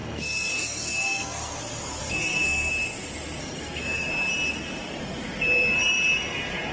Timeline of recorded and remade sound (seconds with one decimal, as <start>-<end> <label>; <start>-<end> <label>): 0.0-1.6 remade; 1.6-2.0 recorded; 2.0-2.7 remade; 2.7-3.4 recorded; 3.4-4.1 remade; 4.1-6.7 recorded